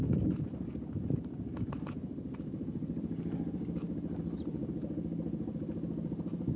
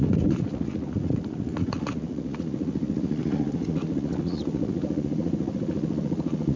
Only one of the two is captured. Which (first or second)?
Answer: first